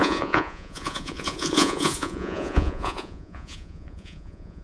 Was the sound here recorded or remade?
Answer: remade